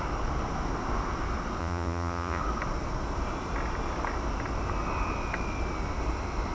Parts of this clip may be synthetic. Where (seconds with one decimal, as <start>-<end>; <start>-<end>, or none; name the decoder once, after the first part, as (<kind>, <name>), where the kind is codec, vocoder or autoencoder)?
1.6-2.4 (vocoder, Vocos)